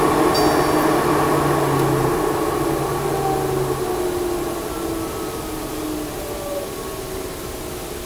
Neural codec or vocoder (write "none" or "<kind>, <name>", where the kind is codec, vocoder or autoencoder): none